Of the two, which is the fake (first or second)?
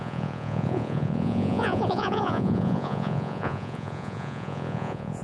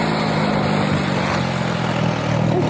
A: first